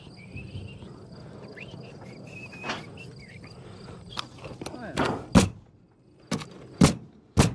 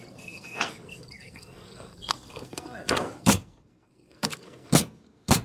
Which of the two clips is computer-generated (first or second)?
second